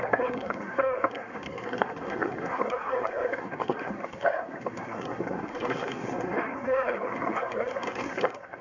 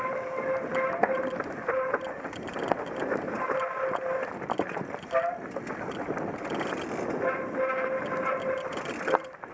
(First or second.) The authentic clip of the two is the second